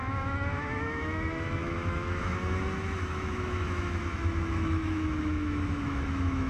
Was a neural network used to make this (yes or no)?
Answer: yes